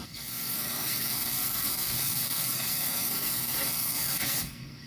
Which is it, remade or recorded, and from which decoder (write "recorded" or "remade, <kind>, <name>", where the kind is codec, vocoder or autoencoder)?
remade, codec, SNAC